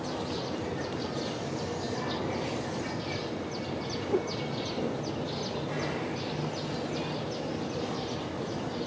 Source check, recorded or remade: recorded